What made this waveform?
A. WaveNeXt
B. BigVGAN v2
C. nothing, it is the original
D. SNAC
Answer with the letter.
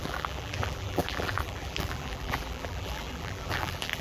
B